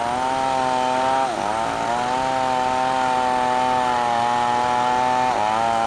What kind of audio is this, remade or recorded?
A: recorded